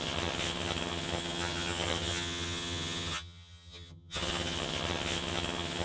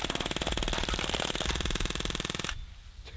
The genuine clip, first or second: second